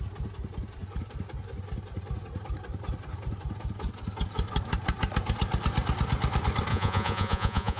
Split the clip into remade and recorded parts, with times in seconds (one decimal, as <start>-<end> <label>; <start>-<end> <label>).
0.0-6.7 recorded; 6.7-7.8 remade